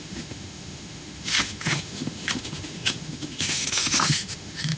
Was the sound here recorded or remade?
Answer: remade